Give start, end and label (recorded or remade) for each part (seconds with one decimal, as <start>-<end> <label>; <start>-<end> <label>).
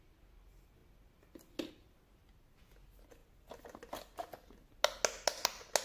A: 0.0-5.8 recorded